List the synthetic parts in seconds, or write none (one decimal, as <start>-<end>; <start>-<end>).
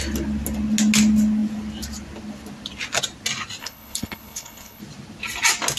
3.6-4.8